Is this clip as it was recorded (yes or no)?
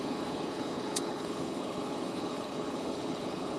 no